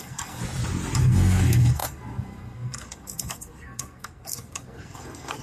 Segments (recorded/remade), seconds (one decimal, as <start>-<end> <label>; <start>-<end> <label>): 0.0-0.4 remade; 0.4-1.0 recorded; 1.0-5.4 remade